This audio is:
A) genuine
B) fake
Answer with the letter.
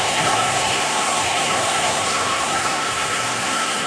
B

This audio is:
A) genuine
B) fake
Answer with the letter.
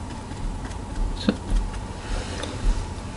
A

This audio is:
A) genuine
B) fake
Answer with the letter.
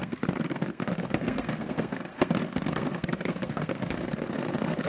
B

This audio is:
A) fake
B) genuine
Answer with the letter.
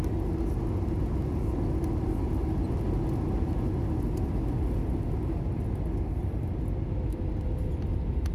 B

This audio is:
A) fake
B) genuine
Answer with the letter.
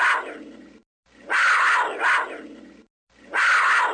B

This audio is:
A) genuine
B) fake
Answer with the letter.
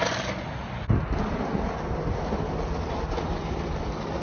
A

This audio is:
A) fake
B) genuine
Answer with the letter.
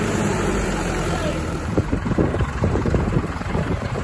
A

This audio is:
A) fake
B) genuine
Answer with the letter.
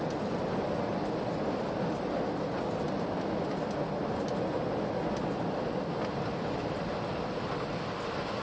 B